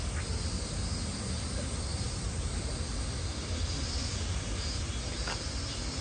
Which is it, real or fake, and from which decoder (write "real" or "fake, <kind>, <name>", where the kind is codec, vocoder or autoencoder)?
real